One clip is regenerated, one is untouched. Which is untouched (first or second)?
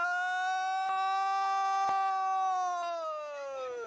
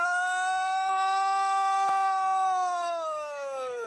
first